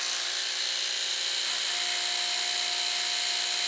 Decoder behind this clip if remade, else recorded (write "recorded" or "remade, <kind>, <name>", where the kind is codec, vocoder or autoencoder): recorded